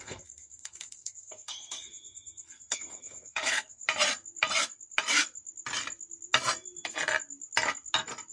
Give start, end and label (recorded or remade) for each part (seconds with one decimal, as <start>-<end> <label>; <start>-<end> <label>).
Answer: 0.0-3.8 remade; 3.8-8.3 recorded